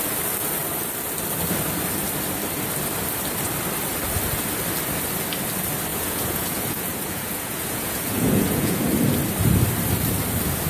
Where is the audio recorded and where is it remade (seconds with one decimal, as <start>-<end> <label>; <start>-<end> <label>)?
0.0-5.9 recorded; 5.9-8.8 remade; 8.8-10.7 recorded